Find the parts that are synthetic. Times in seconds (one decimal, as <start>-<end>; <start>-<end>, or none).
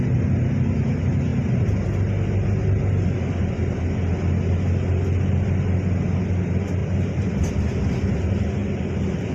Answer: 6.8-7.5; 8.6-9.3